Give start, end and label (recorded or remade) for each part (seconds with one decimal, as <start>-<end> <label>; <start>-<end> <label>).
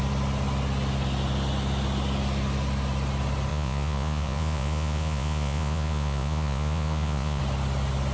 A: 0.0-3.5 recorded; 3.5-7.4 remade; 7.4-8.1 recorded